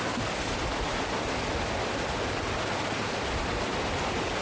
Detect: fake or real real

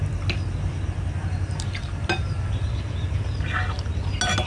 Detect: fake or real real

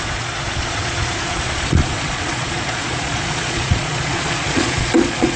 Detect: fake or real fake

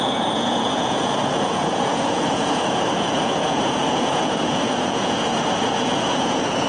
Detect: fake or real fake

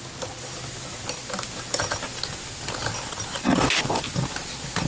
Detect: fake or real real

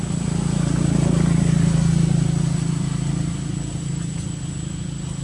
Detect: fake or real real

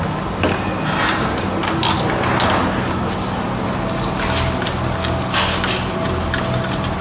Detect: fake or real real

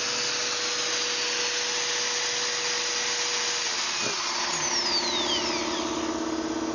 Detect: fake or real real